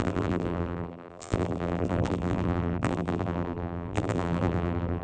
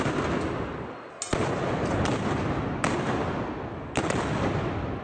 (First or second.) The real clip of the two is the second